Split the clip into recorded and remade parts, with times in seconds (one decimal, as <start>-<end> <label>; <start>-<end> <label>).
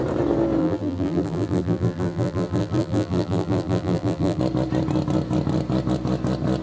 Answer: 0.0-0.6 recorded; 0.6-4.4 remade; 4.4-6.6 recorded